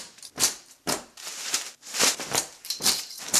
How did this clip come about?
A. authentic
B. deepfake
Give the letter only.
B